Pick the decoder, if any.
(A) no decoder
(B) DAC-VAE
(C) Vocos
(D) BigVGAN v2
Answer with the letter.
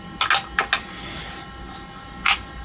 A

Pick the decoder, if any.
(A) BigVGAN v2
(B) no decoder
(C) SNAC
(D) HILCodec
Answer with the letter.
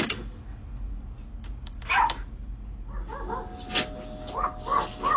B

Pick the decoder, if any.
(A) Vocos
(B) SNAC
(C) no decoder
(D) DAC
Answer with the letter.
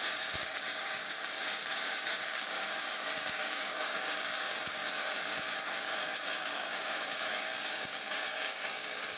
D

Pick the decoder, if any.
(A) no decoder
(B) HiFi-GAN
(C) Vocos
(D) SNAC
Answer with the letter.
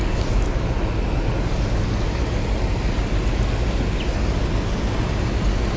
A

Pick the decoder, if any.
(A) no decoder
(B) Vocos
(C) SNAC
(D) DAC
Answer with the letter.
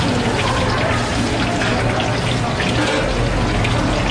A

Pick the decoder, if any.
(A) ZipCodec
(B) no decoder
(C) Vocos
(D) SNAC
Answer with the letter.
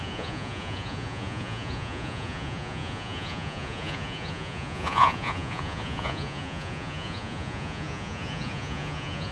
C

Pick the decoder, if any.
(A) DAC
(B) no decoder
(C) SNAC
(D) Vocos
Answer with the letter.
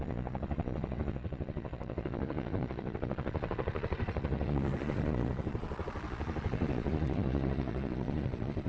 D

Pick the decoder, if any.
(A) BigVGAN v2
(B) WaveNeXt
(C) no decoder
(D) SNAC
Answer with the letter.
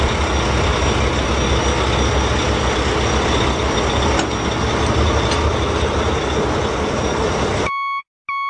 C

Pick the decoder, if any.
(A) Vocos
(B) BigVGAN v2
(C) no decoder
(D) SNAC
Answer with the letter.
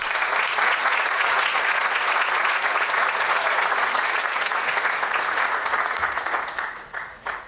A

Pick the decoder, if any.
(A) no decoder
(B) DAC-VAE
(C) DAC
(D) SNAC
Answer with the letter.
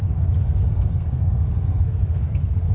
D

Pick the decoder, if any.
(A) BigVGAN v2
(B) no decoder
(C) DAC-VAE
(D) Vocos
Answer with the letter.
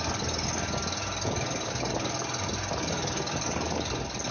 B